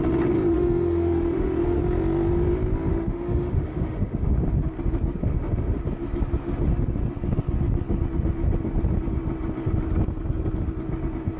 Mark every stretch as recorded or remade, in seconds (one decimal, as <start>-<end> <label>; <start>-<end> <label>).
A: 0.0-0.5 recorded; 0.5-1.8 remade; 1.8-2.9 recorded; 2.9-4.4 remade; 4.4-5.2 recorded; 5.2-5.8 remade; 5.8-11.4 recorded